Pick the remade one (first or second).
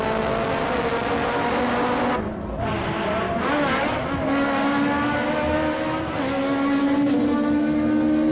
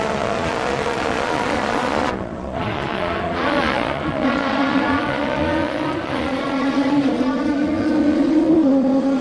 second